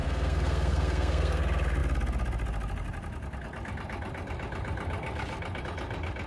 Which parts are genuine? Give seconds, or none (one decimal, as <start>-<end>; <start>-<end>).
1.4-6.3